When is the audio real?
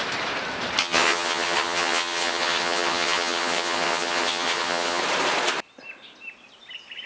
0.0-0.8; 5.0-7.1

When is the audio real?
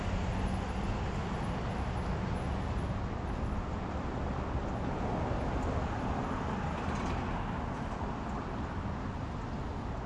0.0-10.1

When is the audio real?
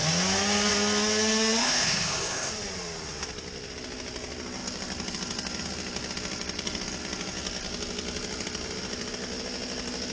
0.0-1.6; 2.5-10.1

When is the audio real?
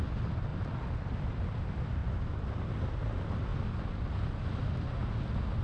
0.0-0.5; 1.4-2.0; 2.6-5.6